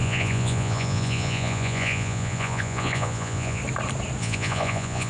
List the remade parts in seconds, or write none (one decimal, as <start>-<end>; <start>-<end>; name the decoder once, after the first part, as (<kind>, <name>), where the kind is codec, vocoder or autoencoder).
0.0-3.6 (vocoder, Vocos); 4.2-5.1